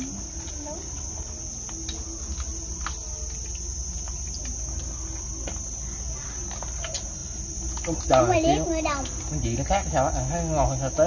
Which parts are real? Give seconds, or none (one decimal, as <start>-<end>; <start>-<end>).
0.0-11.1